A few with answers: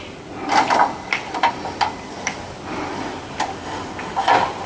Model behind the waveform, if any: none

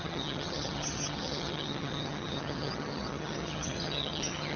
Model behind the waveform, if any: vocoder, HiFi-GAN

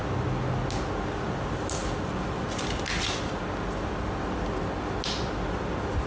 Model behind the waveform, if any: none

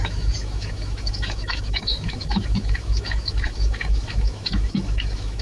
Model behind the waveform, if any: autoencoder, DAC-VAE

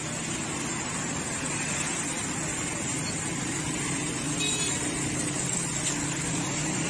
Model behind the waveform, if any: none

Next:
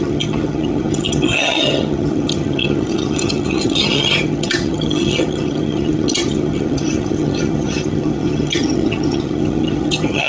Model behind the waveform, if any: vocoder, HiFi-GAN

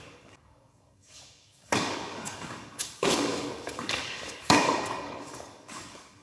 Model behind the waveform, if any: codec, DAC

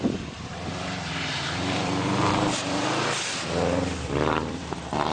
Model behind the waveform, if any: vocoder, BigVGAN v2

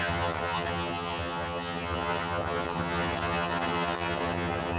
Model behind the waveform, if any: vocoder, HiFi-GAN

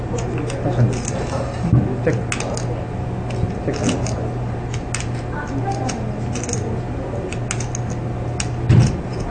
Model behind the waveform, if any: none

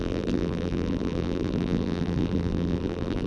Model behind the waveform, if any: vocoder, BigVGAN v2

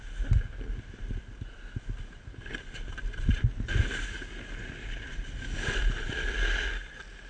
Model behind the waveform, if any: none